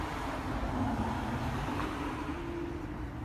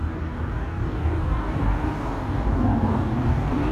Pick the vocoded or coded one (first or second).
second